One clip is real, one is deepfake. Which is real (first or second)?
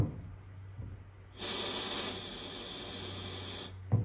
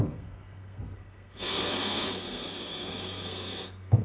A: first